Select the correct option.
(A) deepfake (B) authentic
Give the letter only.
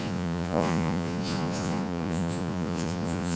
A